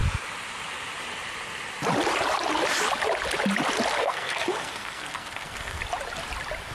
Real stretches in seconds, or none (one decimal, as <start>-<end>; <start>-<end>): 0.0-4.0; 5.8-6.7